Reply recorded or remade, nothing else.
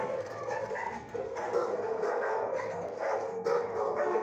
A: remade